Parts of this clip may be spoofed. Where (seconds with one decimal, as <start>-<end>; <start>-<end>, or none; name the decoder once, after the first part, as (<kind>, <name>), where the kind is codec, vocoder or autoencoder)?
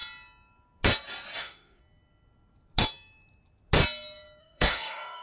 1.4-1.8 (autoencoder, DAC-VAE); 4.4-5.2